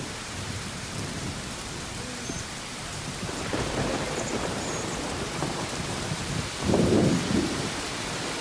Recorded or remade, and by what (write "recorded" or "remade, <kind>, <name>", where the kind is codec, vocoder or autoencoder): remade, vocoder, BigVGAN v2